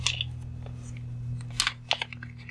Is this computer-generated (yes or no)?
no